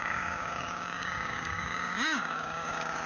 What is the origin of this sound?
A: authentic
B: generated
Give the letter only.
B